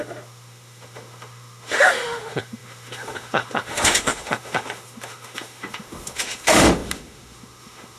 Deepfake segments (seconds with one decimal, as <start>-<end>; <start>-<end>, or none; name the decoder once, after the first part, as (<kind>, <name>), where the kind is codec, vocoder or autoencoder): 0.0-8.0 (autoencoder, DAC-VAE)